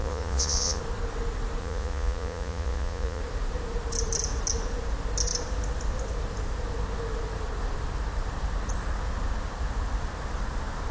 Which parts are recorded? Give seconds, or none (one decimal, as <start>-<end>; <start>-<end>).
0.8-1.6; 3.2-10.9